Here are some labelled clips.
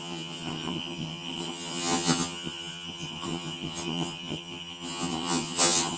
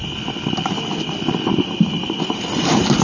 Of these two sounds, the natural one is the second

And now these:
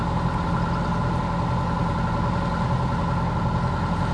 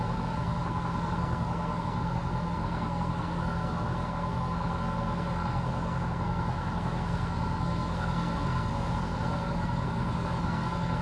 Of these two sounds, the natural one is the first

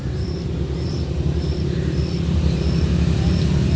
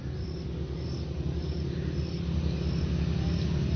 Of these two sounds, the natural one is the second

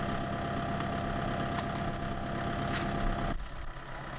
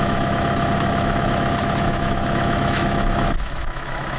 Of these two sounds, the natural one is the first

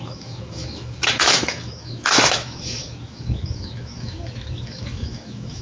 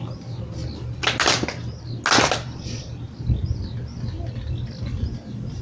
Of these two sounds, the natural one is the second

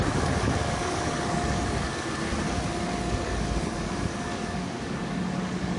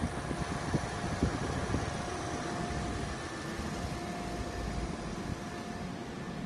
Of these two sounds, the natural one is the second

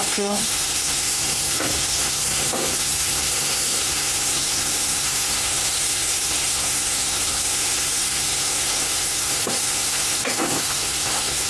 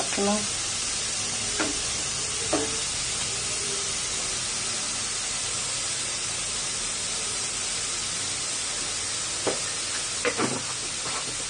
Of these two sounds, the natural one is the second